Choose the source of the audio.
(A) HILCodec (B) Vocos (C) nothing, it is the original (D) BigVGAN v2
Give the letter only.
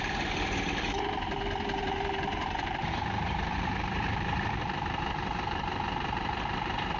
D